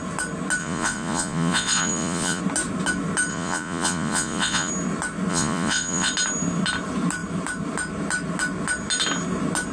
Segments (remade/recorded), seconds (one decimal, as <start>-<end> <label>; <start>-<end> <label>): 0.0-0.6 recorded; 0.6-2.4 remade; 2.4-3.3 recorded; 3.3-4.7 remade; 4.7-5.3 recorded; 5.3-6.1 remade; 6.1-9.7 recorded